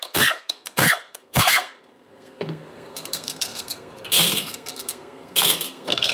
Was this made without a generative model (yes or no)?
no